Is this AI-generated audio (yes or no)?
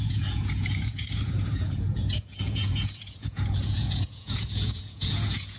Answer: yes